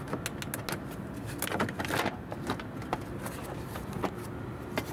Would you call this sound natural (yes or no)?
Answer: yes